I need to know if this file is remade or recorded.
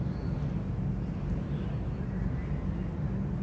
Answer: recorded